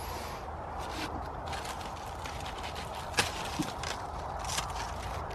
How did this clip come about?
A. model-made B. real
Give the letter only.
B